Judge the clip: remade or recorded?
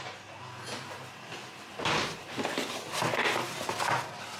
recorded